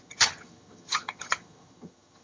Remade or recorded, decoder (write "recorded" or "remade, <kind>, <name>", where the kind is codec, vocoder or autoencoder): remade, vocoder, HiFi-GAN